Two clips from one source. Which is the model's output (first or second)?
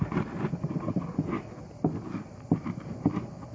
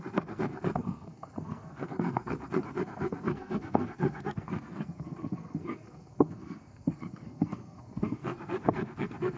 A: second